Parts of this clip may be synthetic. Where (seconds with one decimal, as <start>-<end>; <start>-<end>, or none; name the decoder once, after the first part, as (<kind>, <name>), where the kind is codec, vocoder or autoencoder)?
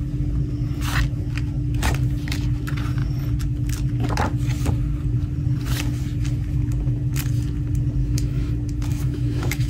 8.0-8.5 (autoencoder, DAC-VAE); 8.9-9.7